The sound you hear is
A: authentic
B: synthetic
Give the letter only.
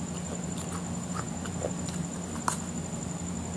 A